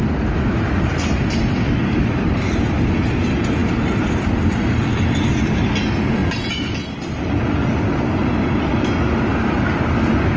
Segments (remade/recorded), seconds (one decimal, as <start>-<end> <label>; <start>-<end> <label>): 0.0-10.4 recorded